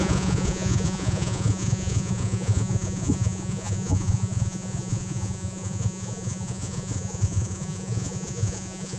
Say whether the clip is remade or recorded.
remade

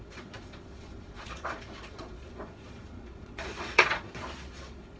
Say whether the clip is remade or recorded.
remade